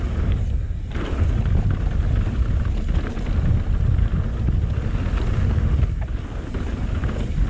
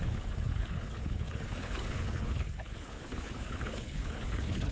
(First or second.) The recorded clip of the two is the first